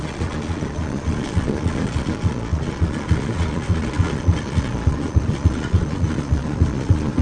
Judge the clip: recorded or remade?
remade